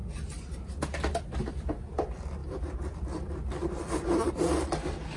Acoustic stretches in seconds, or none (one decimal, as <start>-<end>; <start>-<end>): 0.0-2.4; 4.3-5.2